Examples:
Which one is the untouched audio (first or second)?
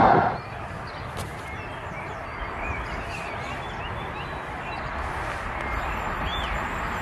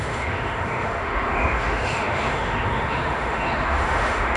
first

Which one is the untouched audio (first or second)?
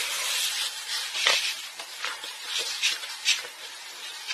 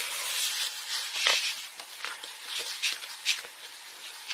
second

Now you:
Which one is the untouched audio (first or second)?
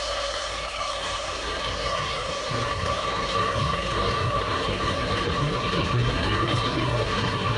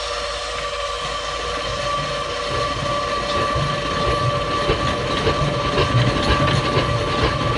second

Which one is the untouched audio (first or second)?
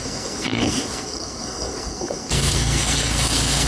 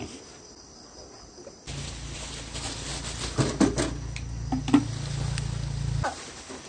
second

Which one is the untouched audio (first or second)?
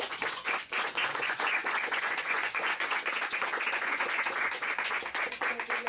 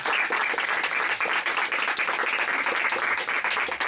second